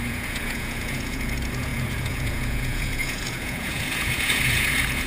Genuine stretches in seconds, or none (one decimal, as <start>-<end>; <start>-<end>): none